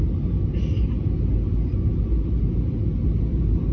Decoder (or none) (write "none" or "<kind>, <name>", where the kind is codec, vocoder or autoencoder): none